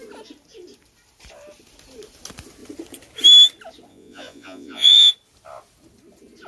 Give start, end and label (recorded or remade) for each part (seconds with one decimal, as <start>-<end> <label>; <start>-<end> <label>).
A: 0.0-3.9 recorded; 3.9-5.1 remade; 5.1-6.5 recorded